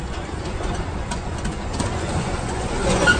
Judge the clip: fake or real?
fake